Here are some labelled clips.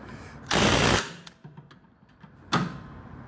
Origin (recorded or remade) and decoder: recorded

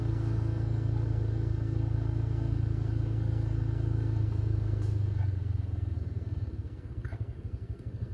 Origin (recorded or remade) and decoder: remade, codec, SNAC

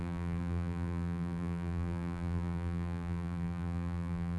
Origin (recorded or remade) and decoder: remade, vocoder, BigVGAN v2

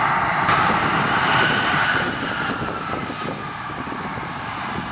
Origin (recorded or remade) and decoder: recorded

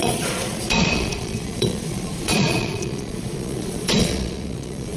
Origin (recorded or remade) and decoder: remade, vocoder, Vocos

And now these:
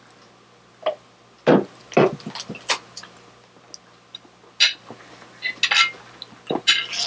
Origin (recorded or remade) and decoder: recorded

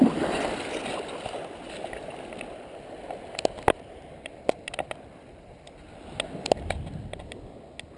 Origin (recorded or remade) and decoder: recorded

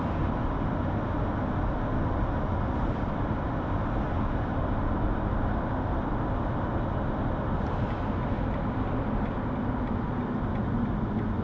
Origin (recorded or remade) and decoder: recorded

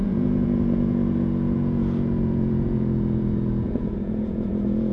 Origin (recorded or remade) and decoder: remade, vocoder, Vocos